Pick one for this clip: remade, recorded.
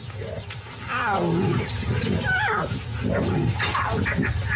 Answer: recorded